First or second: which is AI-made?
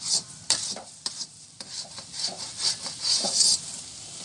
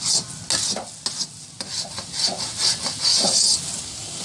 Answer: first